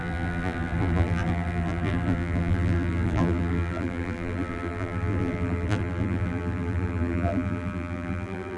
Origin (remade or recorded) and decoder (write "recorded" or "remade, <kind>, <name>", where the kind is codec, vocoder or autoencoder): remade, vocoder, BigVGAN v2